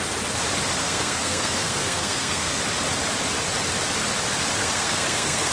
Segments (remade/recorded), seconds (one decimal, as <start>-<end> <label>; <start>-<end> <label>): 0.0-0.8 recorded; 0.8-2.6 remade; 2.6-4.6 recorded; 4.6-5.5 remade